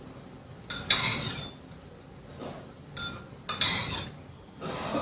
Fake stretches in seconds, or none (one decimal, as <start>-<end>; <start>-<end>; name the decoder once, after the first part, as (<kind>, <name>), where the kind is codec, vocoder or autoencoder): none